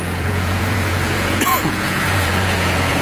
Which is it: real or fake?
fake